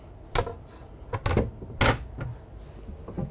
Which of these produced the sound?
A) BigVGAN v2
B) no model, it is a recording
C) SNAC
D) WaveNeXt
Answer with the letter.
B